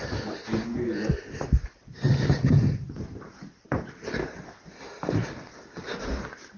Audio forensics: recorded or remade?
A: recorded